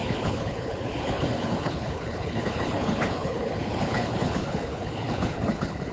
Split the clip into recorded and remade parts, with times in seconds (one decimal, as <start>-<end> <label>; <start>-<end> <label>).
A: 0.0-5.9 remade